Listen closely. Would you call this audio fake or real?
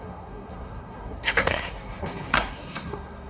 fake